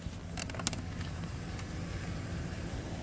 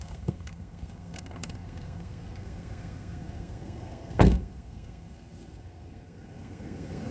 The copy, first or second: second